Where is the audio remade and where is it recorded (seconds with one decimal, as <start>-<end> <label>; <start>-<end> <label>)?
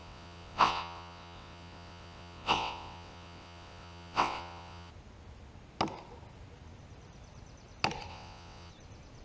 0.0-4.9 remade; 4.9-8.1 recorded; 8.1-8.7 remade; 8.7-9.2 recorded